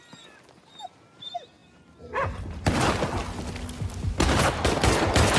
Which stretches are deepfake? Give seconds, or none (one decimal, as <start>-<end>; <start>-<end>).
none